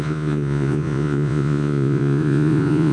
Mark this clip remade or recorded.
remade